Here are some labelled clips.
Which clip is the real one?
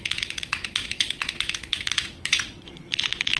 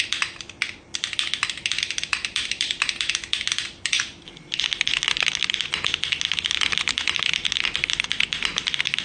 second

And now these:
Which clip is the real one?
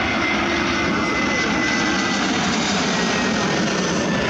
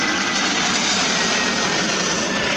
first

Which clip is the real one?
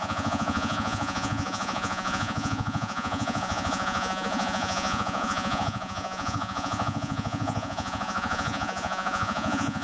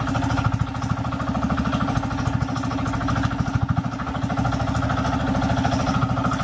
second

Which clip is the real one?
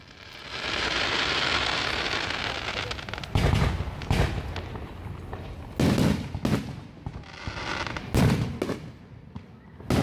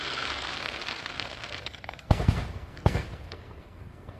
first